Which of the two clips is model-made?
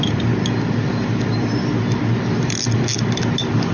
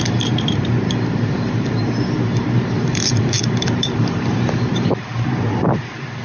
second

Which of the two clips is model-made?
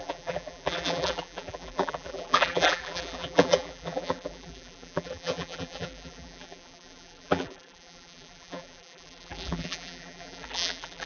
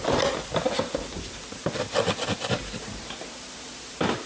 first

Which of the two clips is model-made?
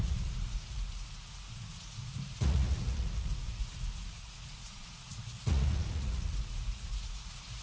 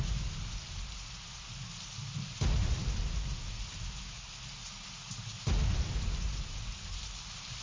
first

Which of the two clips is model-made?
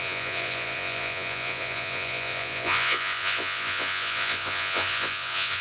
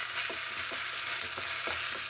first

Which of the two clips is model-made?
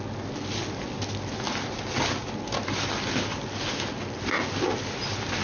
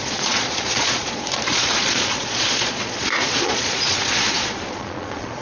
second